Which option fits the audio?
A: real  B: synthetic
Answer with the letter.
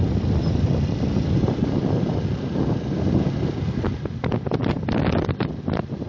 A